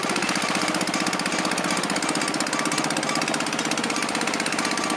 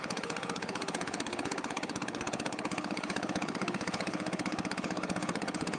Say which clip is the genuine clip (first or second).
first